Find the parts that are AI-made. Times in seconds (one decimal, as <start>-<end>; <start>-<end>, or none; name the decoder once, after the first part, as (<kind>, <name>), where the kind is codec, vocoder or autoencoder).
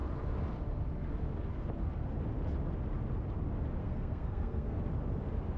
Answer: 3.8-4.8 (codec, SNAC)